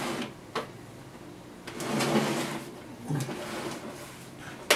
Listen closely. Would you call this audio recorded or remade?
recorded